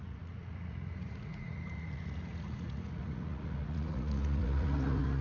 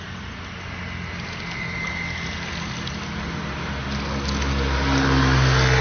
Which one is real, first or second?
second